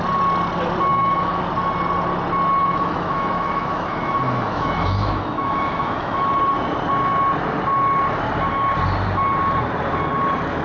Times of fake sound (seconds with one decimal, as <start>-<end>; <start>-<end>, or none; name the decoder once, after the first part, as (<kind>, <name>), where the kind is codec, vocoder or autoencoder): 0.9-1.4 (autoencoder, DAC-VAE); 2.6-6.2